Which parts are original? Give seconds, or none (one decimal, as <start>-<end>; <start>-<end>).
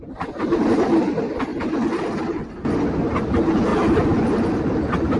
0.0-5.2